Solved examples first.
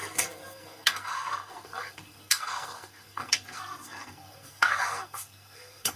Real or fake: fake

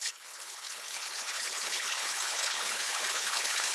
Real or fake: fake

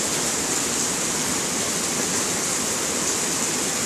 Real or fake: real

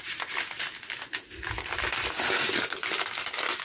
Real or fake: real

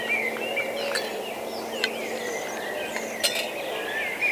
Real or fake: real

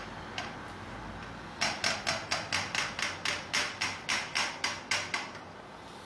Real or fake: real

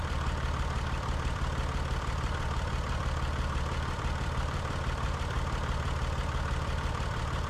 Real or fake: fake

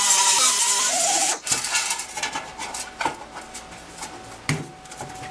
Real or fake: real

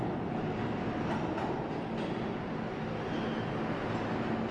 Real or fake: real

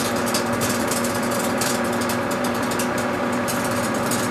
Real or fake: fake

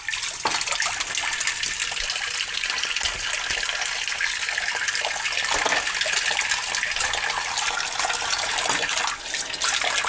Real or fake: real